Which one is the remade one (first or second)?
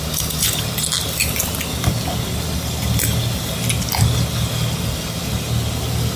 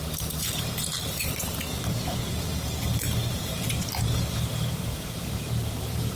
second